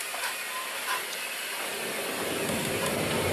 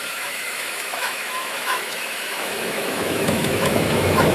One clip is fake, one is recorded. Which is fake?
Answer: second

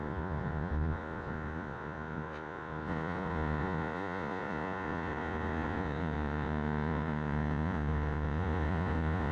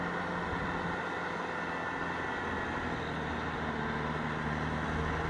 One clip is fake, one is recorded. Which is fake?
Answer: first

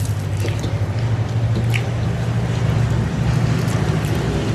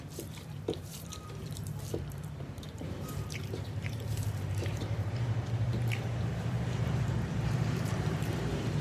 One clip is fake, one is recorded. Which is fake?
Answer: second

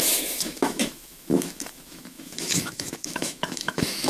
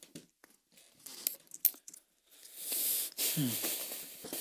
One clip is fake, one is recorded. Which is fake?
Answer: first